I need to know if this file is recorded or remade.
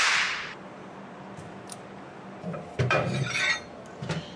recorded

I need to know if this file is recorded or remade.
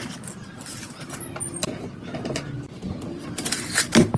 recorded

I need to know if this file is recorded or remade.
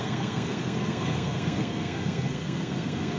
remade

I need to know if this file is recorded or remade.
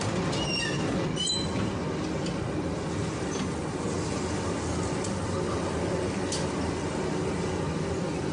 recorded